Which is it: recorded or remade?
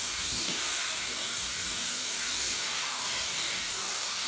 remade